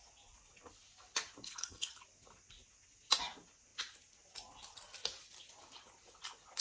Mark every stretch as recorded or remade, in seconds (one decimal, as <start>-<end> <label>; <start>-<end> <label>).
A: 0.0-1.4 recorded; 1.4-1.9 remade; 1.9-6.6 recorded